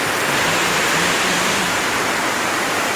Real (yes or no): no